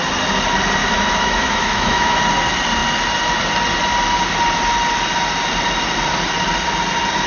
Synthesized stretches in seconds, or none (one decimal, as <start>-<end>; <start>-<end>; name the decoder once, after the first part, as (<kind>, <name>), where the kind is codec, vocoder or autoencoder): 0.8-2.2 (autoencoder, DAC-VAE)